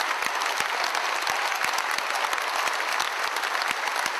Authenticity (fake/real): real